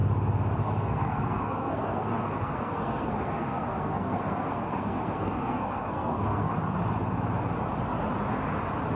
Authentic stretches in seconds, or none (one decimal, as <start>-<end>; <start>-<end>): 0.0-0.6; 6.5-9.0